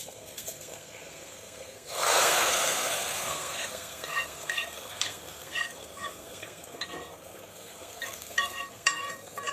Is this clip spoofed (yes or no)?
yes